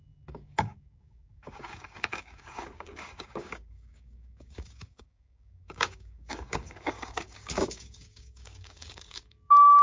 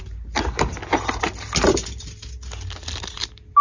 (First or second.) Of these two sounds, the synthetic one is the first